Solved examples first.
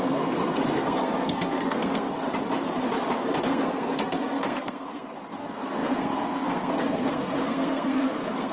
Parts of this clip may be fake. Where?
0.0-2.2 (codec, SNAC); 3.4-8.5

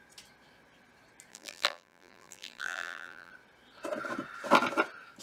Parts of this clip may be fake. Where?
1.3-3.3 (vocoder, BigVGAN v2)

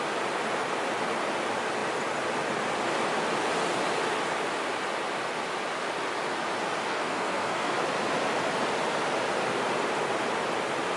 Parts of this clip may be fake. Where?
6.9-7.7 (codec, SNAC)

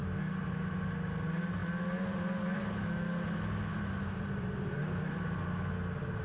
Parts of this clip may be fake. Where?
3.7-5.7 (vocoder, BigVGAN v2)

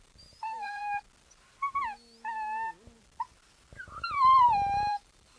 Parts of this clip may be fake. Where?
0.0-0.8 (vocoder, BigVGAN v2); 4.0-5.4